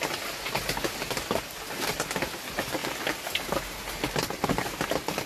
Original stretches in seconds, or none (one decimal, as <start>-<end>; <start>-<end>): 0.0-5.3